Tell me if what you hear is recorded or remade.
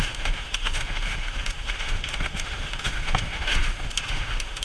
remade